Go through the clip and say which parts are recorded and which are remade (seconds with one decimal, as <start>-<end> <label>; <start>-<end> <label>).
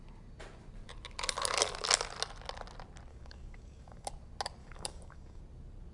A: 0.0-3.1 recorded; 3.1-4.1 remade; 4.1-4.6 recorded; 4.6-5.4 remade; 5.4-5.9 recorded